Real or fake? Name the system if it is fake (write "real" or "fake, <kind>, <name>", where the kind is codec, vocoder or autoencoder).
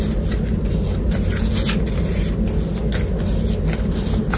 real